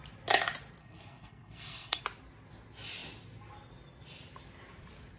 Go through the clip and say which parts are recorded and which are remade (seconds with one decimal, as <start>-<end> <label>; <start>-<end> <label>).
0.0-0.8 recorded; 0.8-2.0 remade; 2.0-5.2 recorded